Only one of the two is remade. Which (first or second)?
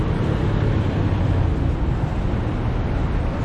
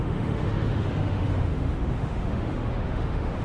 second